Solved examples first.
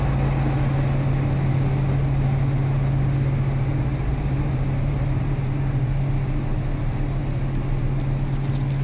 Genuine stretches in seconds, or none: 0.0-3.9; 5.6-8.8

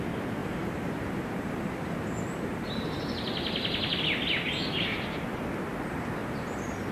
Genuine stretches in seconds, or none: 0.0-0.4; 3.0-6.2